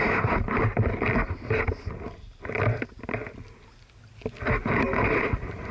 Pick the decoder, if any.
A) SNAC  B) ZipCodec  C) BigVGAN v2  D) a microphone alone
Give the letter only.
D